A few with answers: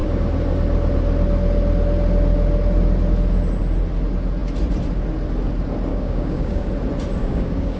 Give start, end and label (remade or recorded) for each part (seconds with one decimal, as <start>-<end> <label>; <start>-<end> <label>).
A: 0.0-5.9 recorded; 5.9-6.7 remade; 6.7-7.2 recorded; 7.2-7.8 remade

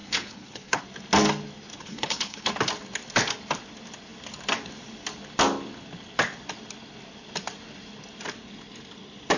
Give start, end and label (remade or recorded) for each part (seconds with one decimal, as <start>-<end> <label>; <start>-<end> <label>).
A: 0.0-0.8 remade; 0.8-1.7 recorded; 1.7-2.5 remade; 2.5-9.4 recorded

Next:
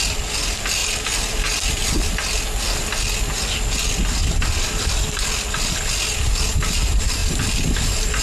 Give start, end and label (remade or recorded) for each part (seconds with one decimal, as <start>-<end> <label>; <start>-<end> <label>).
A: 0.0-8.2 recorded

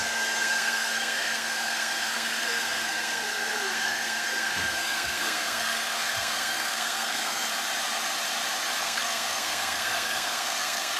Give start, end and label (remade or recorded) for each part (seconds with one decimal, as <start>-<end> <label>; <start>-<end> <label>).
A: 0.0-7.5 remade; 7.5-8.8 recorded; 8.8-11.0 remade

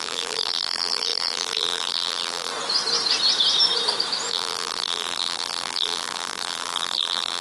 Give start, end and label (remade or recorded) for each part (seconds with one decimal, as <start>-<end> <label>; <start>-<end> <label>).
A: 0.0-2.5 remade; 2.5-4.3 recorded; 4.3-7.4 remade

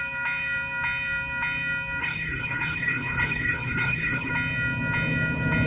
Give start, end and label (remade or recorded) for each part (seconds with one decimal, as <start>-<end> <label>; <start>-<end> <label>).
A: 0.0-2.0 recorded; 2.0-4.3 remade; 4.3-5.7 recorded

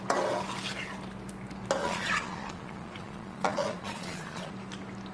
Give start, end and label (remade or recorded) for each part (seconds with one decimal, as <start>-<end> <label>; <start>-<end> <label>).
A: 0.0-1.8 recorded; 1.8-4.5 remade; 4.5-5.1 recorded